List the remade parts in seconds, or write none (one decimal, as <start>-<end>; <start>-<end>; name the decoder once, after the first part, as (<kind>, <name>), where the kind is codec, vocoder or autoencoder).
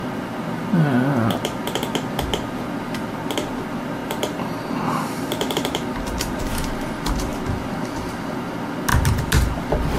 4.0-6.4 (vocoder, BigVGAN v2)